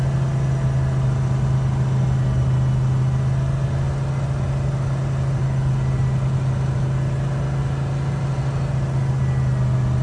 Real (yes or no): yes